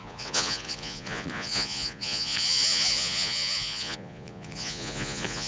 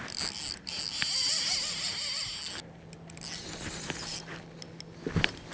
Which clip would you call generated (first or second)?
first